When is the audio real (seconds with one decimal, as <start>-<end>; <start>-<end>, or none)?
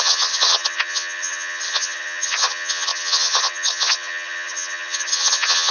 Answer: none